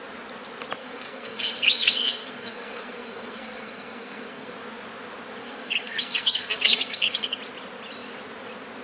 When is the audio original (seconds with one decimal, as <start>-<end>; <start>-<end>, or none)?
0.0-0.8; 4.5-5.4; 7.4-8.8